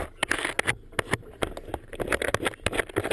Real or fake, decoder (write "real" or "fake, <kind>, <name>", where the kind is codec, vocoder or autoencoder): real